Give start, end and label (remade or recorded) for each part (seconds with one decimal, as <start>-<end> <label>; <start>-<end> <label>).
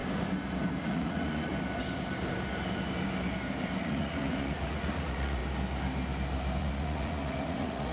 0.0-0.8 recorded; 0.8-1.5 remade; 1.5-3.8 recorded; 3.8-5.4 remade; 5.4-6.6 recorded; 6.6-7.9 remade